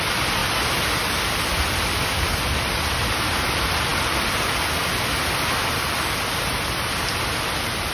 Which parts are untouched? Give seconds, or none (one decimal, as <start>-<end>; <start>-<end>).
0.0-0.4; 2.3-7.9